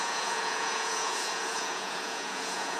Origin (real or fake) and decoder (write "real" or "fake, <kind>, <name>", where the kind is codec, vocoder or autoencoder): fake, vocoder, Vocos